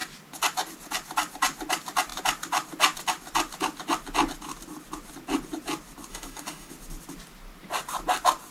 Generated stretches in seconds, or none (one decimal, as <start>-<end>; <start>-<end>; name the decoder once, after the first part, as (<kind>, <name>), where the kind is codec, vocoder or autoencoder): 6.1-6.7 (autoencoder, DAC-VAE)